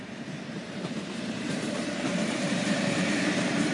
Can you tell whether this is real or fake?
fake